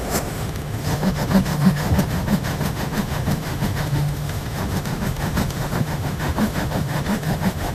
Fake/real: fake